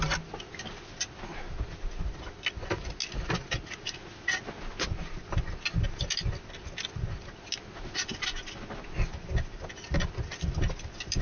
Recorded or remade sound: recorded